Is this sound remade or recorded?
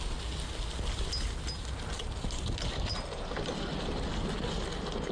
recorded